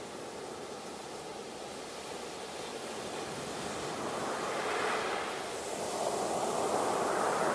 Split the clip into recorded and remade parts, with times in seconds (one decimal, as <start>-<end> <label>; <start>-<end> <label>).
0.0-7.5 recorded